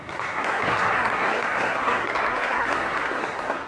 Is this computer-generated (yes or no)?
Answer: yes